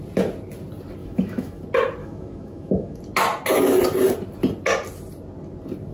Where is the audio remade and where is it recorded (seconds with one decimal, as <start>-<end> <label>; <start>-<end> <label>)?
0.0-1.0 recorded; 1.0-1.6 remade; 1.6-2.0 recorded; 2.0-3.0 remade; 3.0-5.9 recorded